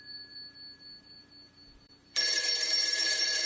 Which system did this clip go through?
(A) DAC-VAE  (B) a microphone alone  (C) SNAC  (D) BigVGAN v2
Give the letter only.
D